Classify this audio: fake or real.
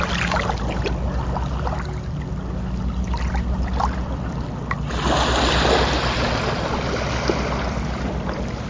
real